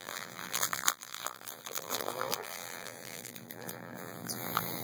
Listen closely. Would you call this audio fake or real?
fake